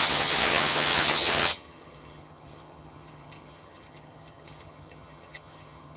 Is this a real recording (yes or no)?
no